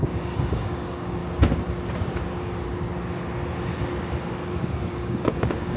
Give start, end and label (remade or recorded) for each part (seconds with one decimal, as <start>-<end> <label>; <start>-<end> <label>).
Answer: 0.0-1.2 remade; 1.2-4.6 recorded; 4.6-5.8 remade